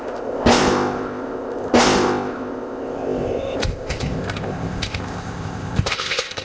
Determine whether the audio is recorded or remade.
remade